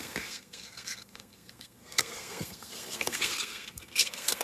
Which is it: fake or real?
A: fake